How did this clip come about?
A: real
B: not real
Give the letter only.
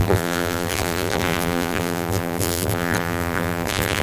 B